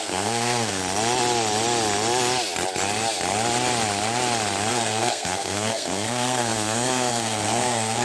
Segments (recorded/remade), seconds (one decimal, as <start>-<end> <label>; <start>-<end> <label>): 0.0-0.8 remade; 0.8-4.7 recorded; 4.7-8.0 remade